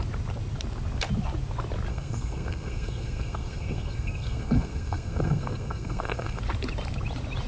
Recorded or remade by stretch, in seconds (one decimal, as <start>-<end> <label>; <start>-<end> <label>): 0.0-1.9 recorded; 1.9-6.4 remade; 6.4-7.5 recorded